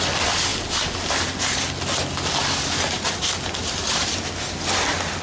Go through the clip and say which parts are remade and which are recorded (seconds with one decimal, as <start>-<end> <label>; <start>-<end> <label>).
0.0-5.2 recorded